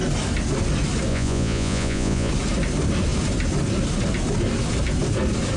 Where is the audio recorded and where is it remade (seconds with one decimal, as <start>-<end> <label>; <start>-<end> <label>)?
0.0-1.1 recorded; 1.1-2.3 remade; 2.3-5.6 recorded